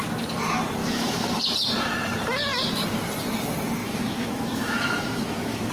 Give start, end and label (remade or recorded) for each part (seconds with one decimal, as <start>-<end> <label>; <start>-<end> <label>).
0.0-0.8 recorded; 0.8-1.4 remade; 1.4-3.8 recorded; 3.8-5.7 remade